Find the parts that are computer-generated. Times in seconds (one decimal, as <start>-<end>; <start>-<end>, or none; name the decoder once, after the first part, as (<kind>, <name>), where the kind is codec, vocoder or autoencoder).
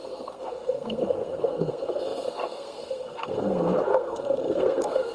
0.0-5.1 (codec, SNAC)